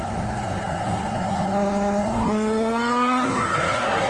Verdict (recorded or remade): remade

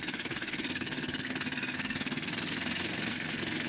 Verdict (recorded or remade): remade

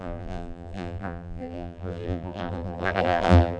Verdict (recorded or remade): remade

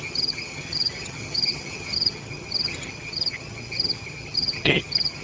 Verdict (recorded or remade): remade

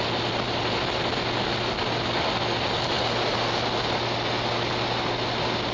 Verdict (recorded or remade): recorded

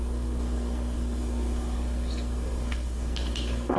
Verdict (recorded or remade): remade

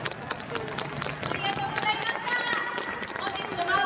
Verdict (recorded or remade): recorded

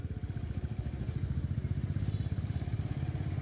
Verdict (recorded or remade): recorded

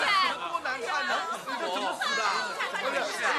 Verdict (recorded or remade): recorded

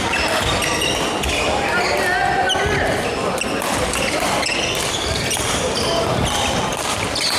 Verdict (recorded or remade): recorded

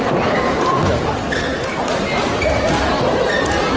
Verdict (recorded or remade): recorded